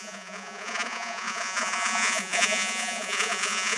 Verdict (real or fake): fake